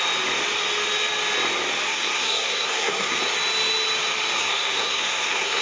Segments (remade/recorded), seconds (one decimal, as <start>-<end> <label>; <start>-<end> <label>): 0.0-1.9 recorded; 1.9-3.2 remade; 3.2-4.4 recorded; 4.4-5.6 remade